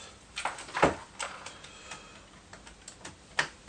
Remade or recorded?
recorded